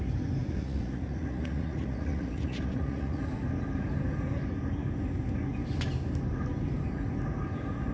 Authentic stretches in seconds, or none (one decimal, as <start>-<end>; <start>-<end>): 0.0-0.4; 3.2-7.9